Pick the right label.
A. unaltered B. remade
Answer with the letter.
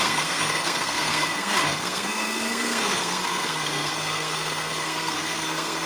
B